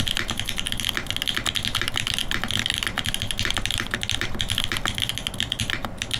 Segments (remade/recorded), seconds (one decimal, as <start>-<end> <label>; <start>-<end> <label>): 0.0-6.2 recorded